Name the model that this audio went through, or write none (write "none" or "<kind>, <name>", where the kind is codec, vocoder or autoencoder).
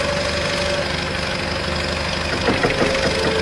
none